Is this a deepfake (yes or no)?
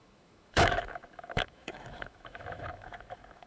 yes